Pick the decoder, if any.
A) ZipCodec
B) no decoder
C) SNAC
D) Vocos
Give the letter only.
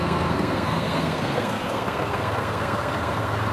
C